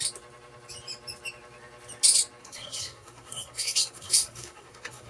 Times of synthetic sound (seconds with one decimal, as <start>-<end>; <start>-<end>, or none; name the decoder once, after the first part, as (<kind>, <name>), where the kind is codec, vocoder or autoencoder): 2.4-5.1 (codec, SNAC)

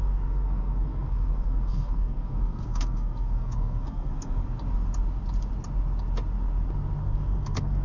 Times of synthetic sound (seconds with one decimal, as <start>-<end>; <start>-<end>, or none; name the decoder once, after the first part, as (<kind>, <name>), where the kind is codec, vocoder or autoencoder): 0.0-4.4 (codec, SNAC); 7.0-7.8

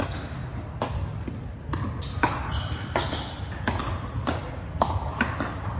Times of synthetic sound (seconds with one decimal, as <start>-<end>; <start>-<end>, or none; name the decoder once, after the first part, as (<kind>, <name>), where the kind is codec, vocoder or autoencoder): none

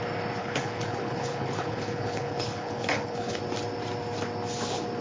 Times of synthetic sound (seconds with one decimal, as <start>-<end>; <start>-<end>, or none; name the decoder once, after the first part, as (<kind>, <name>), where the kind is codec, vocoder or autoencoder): 0.4-3.4 (codec, HILCodec)

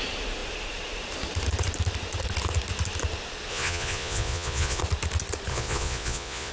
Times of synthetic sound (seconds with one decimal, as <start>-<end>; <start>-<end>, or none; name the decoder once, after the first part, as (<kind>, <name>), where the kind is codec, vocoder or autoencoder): 3.5-4.8 (vocoder, Vocos); 5.5-6.5